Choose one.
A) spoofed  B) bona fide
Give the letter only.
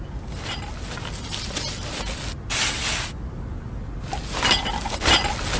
B